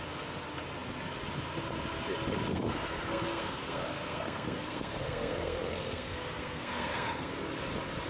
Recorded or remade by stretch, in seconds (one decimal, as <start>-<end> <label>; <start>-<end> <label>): 0.0-2.5 recorded; 2.5-7.3 remade; 7.3-8.1 recorded